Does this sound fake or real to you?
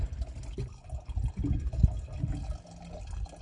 real